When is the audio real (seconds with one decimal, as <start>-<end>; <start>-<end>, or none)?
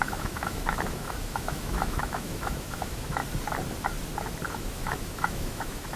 3.2-4.5